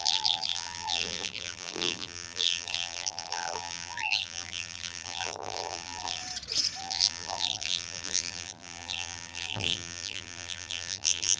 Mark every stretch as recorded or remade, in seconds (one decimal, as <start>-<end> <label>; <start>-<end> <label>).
0.0-6.2 remade; 6.2-6.8 recorded; 6.8-11.4 remade